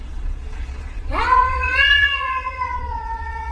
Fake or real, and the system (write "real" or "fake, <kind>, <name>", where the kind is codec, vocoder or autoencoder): fake, vocoder, Vocos